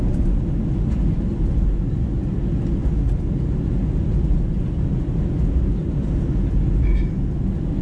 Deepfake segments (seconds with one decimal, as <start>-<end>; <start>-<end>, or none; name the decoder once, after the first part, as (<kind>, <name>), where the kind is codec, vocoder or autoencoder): none